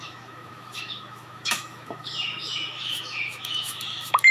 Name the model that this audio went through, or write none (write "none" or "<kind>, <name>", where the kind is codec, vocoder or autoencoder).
autoencoder, DAC-VAE